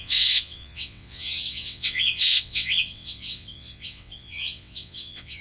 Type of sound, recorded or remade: remade